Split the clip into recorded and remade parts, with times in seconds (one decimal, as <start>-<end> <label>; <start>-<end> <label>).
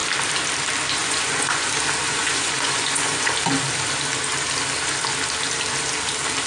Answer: 0.0-1.0 recorded; 1.0-1.7 remade; 1.7-2.1 recorded; 2.1-3.3 remade; 3.3-6.5 recorded